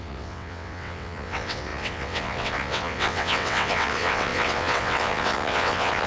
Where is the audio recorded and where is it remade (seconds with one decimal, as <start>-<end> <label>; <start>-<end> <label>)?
0.0-6.1 remade